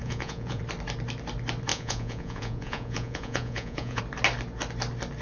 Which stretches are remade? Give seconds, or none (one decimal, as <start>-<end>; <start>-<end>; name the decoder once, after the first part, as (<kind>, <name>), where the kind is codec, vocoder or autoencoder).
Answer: 0.0-0.6 (vocoder, Vocos); 1.7-4.0